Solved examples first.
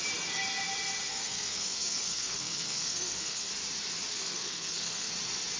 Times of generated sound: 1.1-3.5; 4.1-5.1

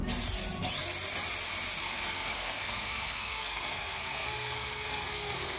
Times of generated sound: 1.8-5.6

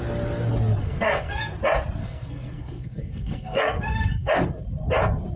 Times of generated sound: 0.8-1.5; 2.0-4.3

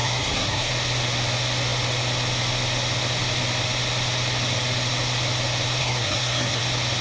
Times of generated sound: 0.0-0.7; 5.8-6.6

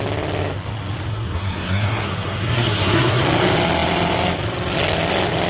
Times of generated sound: 1.1-3.2